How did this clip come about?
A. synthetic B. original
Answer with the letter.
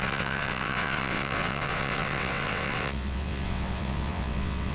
A